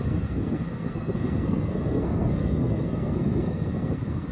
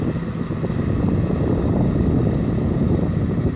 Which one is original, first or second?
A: second